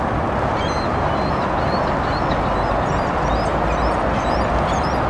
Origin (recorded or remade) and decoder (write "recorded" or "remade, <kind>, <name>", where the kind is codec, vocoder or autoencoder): recorded